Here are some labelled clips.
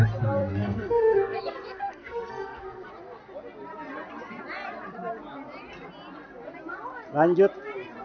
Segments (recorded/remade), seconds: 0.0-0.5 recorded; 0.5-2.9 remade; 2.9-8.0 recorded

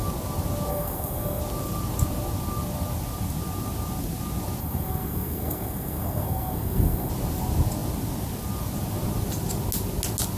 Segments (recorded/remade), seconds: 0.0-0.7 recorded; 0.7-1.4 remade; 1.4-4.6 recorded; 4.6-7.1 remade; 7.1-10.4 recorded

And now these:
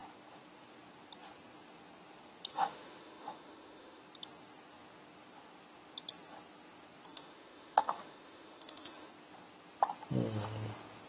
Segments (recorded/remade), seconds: 0.0-2.5 recorded; 2.5-4.0 remade; 4.0-7.1 recorded; 7.1-9.1 remade; 9.1-11.1 recorded

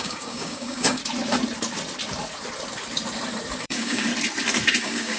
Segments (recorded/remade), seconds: 0.0-1.0 remade; 1.0-3.6 recorded; 3.6-4.1 remade; 4.1-4.8 recorded; 4.8-5.2 remade